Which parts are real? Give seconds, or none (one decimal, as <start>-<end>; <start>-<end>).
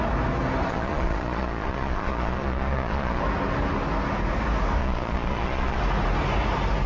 0.0-0.7; 3.2-4.8; 5.8-6.9